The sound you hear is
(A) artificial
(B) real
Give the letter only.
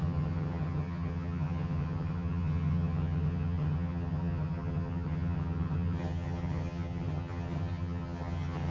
A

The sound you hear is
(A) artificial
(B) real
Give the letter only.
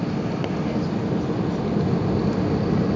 B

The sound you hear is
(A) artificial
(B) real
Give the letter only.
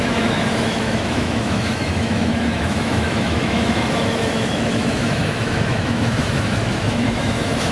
A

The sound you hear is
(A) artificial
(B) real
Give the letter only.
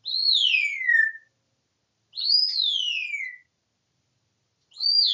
B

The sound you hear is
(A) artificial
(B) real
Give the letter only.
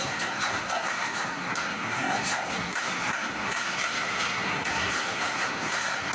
A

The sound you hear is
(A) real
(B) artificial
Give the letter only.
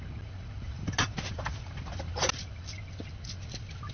A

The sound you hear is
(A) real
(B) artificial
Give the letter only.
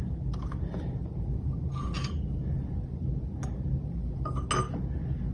A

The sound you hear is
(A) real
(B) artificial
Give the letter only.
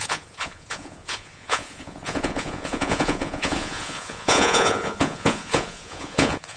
B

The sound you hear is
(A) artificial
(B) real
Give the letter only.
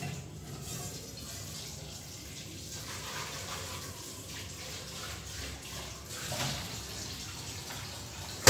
B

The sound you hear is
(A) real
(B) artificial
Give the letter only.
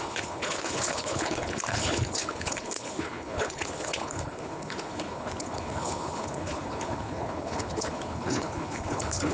B